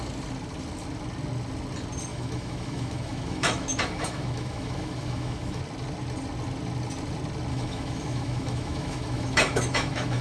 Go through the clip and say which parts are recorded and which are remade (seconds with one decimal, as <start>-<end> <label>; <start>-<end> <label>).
0.0-2.1 recorded; 2.1-5.6 remade; 5.6-7.5 recorded; 7.5-10.2 remade